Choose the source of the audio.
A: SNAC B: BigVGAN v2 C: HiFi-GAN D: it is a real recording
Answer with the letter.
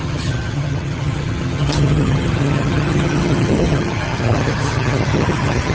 C